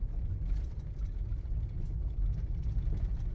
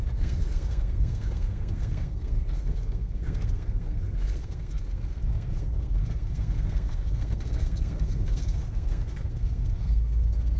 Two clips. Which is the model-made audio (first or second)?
second